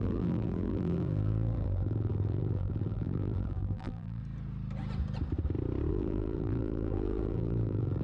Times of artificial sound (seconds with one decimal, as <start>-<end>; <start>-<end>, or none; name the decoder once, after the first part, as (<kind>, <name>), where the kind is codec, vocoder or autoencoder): 0.0-4.2 (vocoder, BigVGAN v2); 5.9-8.0